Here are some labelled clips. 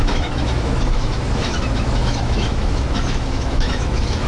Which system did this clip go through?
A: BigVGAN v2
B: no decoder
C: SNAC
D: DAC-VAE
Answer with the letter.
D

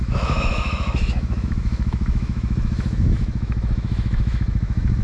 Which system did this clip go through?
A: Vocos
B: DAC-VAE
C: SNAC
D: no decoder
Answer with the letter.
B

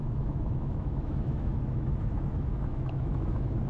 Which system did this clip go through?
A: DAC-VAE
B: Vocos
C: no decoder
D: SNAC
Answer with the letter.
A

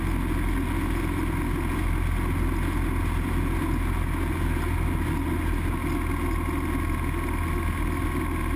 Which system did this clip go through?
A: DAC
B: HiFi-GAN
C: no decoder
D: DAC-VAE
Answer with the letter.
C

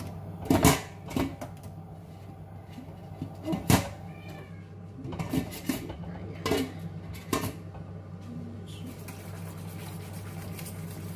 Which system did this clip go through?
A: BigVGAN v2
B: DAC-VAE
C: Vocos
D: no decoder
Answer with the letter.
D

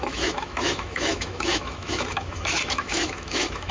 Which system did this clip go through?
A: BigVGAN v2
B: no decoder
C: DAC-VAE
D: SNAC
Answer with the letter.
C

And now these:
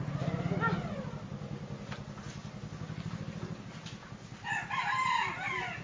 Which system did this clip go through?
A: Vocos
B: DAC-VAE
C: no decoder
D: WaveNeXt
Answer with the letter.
C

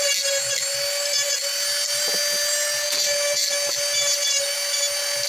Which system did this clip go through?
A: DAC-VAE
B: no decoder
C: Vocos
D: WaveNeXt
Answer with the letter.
B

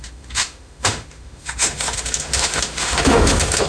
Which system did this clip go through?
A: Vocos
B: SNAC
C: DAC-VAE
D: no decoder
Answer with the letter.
C